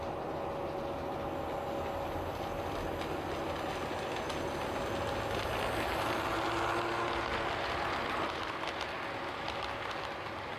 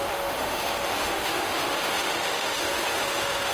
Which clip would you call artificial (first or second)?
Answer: second